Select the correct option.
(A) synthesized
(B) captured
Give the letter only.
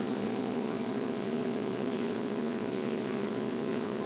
A